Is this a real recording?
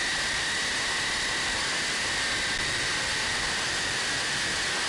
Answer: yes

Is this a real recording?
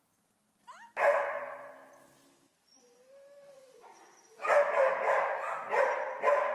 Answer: yes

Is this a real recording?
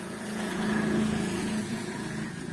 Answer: no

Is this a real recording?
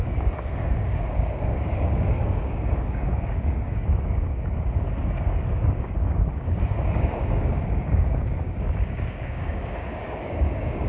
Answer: no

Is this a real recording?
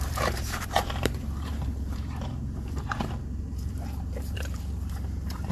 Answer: no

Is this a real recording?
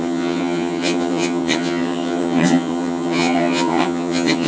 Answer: no